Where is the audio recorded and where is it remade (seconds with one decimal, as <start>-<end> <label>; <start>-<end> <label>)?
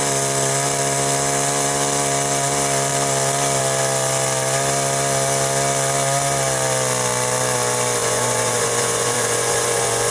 0.0-8.0 recorded; 8.0-10.1 remade